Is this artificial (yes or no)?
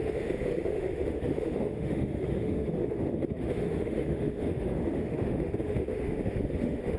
yes